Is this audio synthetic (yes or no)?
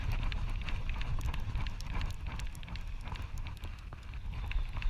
no